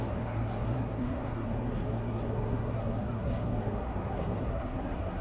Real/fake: fake